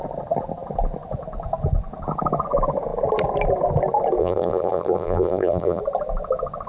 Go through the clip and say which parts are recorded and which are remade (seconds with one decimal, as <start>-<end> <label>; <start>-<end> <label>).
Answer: 0.0-4.2 recorded; 4.2-5.8 remade; 5.8-6.7 recorded